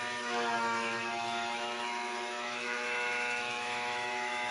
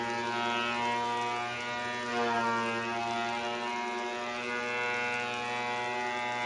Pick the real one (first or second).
second